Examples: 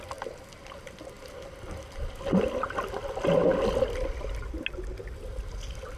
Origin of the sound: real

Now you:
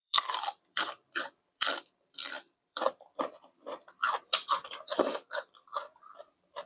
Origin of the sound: fake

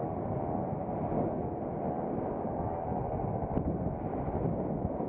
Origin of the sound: real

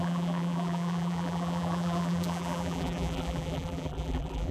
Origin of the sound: fake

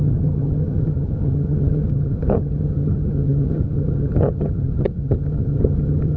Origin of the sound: fake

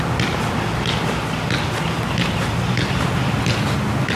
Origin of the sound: real